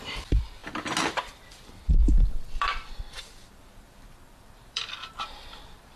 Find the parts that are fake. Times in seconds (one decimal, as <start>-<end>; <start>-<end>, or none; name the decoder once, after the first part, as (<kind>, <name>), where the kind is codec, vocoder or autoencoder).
0.0-0.6 (vocoder, BigVGAN v2); 1.1-6.0